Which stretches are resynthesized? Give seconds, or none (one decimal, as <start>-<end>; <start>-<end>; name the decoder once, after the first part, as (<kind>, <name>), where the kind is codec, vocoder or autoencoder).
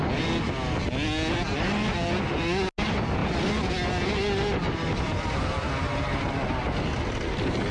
none